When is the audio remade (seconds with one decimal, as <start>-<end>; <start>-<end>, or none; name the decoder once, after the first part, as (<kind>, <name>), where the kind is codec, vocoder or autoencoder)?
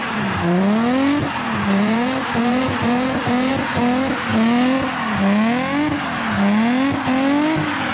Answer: 0.0-0.6 (vocoder, BigVGAN v2); 1.2-3.5